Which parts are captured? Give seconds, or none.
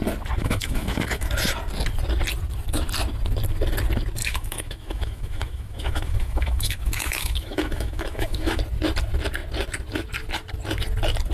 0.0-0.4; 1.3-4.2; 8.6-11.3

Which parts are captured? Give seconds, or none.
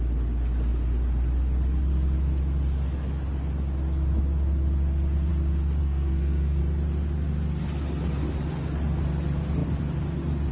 0.0-5.8; 6.6-10.5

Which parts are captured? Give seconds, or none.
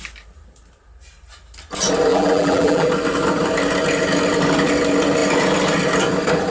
0.0-2.1; 2.9-6.5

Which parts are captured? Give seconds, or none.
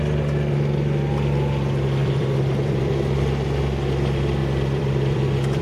0.0-2.0; 3.1-4.4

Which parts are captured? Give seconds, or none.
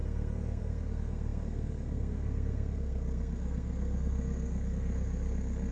none